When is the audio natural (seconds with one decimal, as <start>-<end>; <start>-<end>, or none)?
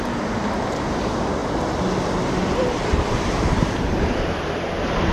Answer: 1.4-2.2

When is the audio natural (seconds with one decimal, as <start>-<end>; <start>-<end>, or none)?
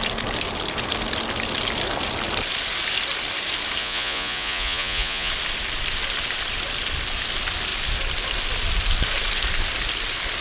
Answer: 0.0-3.8; 5.3-10.4